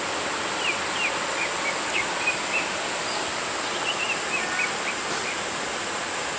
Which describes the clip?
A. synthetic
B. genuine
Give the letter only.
B